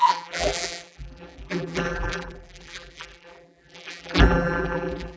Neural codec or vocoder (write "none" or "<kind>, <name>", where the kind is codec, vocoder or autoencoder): vocoder, BigVGAN v2